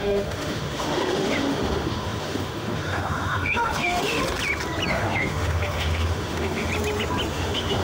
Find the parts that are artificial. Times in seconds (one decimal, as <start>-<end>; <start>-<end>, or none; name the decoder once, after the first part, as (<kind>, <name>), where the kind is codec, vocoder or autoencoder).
0.0-4.2 (autoencoder, DAC-VAE); 4.9-6.7; 7.3-7.8